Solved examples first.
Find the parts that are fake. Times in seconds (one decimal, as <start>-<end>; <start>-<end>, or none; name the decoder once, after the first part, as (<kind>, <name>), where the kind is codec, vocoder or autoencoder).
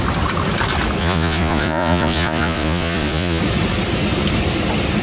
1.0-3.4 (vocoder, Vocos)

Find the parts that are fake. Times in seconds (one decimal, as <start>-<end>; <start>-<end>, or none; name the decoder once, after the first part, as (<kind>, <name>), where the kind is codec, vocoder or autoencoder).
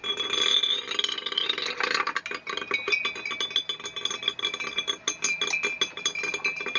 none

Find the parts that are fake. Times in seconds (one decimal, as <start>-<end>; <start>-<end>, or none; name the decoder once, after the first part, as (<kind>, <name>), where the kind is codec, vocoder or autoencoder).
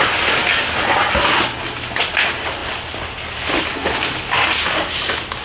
none